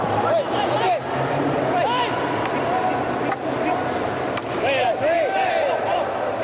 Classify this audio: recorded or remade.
recorded